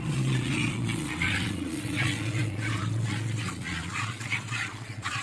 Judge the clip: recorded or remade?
remade